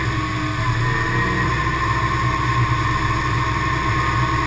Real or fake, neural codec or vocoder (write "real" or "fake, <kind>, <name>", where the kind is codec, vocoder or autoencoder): real